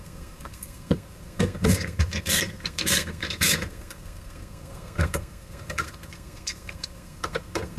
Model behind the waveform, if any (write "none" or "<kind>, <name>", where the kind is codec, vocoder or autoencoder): codec, SNAC